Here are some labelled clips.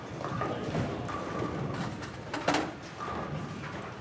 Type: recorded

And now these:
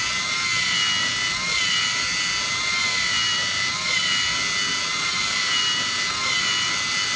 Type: recorded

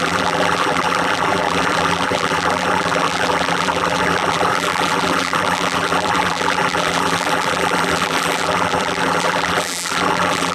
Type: remade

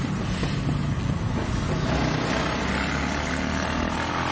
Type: recorded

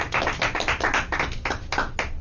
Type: recorded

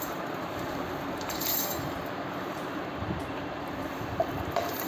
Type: remade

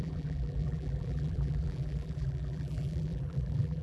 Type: remade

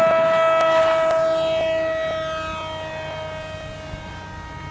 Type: recorded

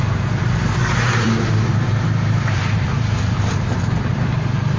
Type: remade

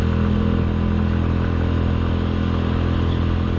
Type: recorded